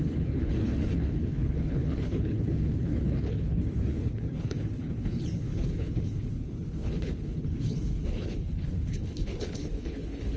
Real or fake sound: fake